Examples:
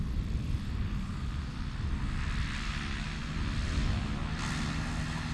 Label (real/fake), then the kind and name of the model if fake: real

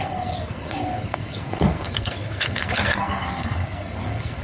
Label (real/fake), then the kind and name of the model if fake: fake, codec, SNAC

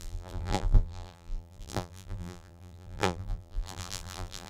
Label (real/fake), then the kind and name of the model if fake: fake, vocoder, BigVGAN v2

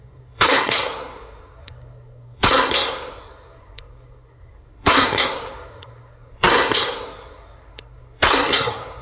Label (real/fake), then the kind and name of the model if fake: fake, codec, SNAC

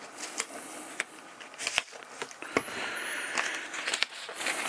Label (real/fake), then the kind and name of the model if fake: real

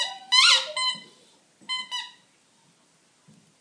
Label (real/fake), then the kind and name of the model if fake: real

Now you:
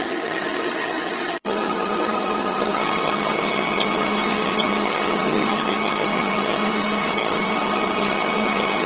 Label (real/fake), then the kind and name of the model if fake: fake, vocoder, HiFi-GAN